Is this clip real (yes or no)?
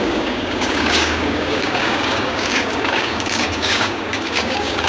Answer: no